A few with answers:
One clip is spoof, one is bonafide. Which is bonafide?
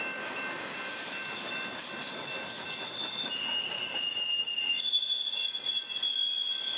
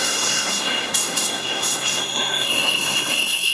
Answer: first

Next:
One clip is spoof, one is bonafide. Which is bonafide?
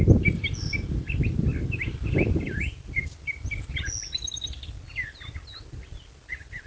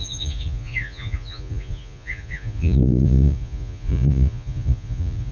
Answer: first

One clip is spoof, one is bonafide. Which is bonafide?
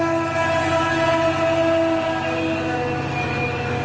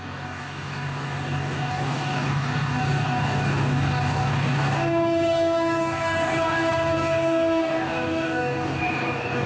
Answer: first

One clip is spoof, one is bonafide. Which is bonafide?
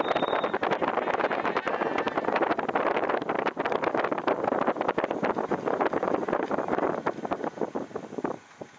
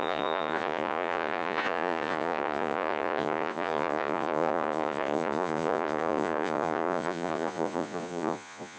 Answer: first